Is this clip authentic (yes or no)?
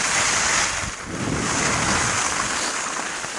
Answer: yes